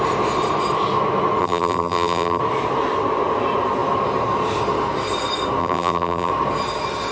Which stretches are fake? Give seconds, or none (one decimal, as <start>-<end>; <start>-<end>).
1.4-2.4; 5.6-6.3